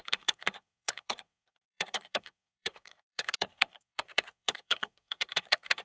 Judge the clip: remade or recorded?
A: remade